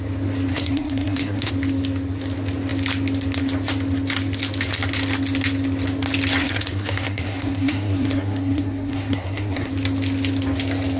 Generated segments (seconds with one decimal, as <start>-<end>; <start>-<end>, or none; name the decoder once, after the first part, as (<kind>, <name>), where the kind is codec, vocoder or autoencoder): 0.5-1.5 (codec, SNAC); 6.4-9.7